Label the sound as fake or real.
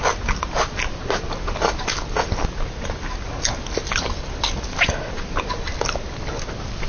real